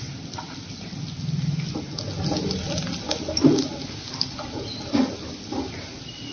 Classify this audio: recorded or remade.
recorded